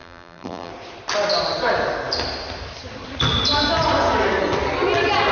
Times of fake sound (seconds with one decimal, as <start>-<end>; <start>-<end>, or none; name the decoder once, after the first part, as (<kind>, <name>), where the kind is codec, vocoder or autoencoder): 0.0-0.7 (vocoder, BigVGAN v2)